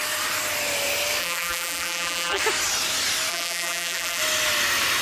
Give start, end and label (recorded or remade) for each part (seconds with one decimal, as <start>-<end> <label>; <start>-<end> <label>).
0.0-1.2 recorded; 1.2-2.4 remade; 2.4-3.3 recorded; 3.3-4.2 remade; 4.2-5.0 recorded